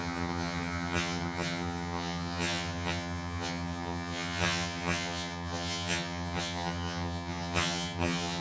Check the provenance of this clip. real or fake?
fake